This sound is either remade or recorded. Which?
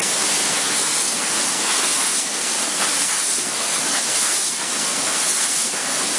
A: remade